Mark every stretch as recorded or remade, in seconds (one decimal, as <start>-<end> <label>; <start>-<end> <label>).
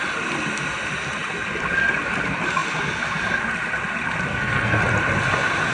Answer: 0.0-4.3 recorded; 4.3-4.8 remade; 4.8-5.7 recorded